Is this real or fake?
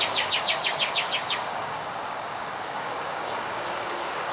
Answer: fake